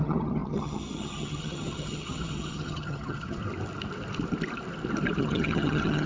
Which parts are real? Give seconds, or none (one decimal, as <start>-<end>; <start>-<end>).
3.4-5.2